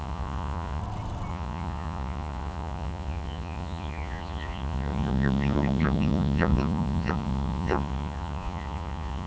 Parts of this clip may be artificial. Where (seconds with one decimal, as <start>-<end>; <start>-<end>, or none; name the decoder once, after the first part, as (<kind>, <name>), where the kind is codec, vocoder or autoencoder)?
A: 0.0-0.8 (vocoder, Vocos); 1.3-9.3